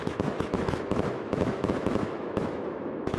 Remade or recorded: remade